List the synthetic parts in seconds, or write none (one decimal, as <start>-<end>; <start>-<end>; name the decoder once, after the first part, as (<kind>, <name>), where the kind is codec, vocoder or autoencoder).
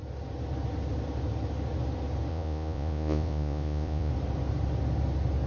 2.3-4.1 (vocoder, Vocos)